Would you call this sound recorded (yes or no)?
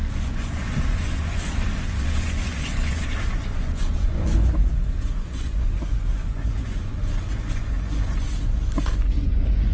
no